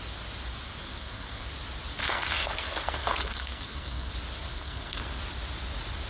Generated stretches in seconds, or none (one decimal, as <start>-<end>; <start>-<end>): 0.8-1.5; 2.0-4.1; 4.5-5.2